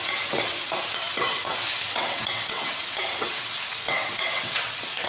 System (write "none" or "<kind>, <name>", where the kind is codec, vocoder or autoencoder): vocoder, WaveNeXt